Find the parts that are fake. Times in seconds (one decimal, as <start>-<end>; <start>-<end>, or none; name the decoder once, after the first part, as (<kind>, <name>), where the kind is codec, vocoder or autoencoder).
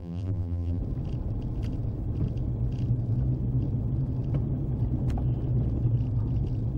0.0-0.8 (vocoder, BigVGAN v2)